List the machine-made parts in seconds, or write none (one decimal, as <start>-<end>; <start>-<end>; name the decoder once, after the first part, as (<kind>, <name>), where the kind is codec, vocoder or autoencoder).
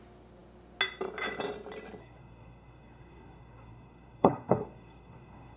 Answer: 2.0-5.6 (codec, SNAC)